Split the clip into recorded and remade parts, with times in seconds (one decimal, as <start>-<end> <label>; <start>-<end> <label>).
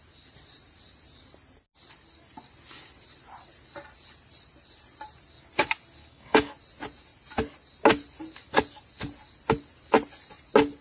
0.0-6.0 recorded; 6.0-6.5 remade; 6.5-10.8 recorded